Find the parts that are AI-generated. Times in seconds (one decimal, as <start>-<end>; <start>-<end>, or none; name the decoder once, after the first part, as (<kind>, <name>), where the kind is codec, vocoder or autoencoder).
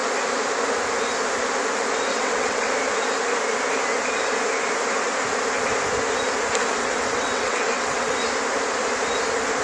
2.1-2.7 (vocoder, WaveNeXt); 6.8-8.1